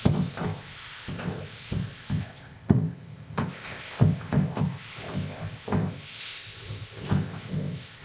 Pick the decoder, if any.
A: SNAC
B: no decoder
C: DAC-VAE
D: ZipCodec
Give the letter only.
D